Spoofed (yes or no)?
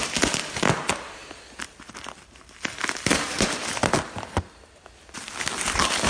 no